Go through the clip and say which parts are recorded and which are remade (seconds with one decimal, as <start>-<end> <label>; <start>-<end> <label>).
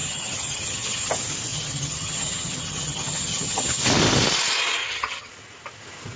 0.0-1.1 remade; 1.1-1.5 recorded; 1.5-3.8 remade; 3.8-4.8 recorded; 4.8-5.3 remade; 5.3-6.2 recorded